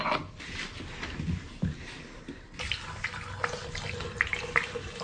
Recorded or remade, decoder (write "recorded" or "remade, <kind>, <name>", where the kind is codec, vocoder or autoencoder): recorded